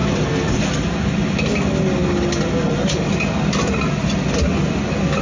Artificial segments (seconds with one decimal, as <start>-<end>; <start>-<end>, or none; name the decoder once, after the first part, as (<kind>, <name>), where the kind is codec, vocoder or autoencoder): none